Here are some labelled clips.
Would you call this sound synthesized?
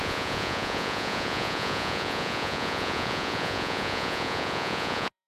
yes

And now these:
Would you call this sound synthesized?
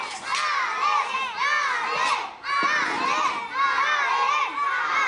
no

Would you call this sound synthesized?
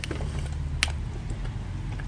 no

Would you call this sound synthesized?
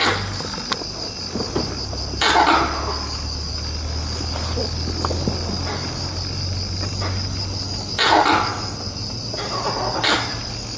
no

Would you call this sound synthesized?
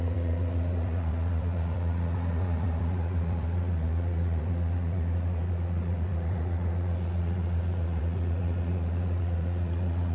yes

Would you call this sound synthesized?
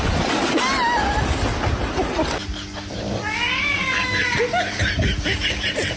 no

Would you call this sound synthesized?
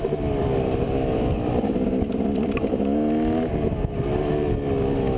no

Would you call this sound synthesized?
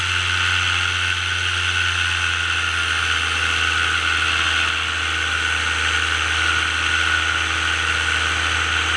no